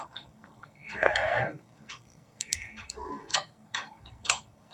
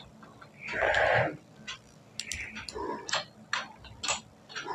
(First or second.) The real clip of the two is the second